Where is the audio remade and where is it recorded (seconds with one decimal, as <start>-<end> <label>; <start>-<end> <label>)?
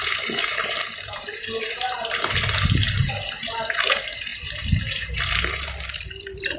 0.0-6.6 remade